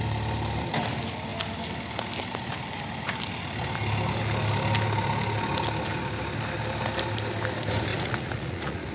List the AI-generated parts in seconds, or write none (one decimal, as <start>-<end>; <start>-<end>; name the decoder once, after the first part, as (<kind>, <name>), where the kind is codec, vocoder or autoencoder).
7.9-8.9 (vocoder, Vocos)